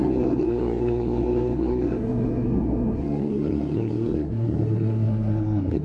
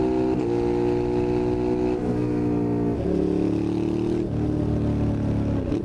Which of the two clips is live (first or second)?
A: second